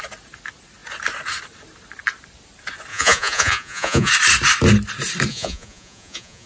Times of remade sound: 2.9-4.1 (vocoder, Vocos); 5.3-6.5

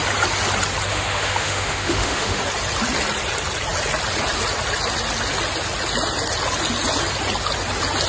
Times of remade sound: 0.9-2.4 (autoencoder, DAC-VAE)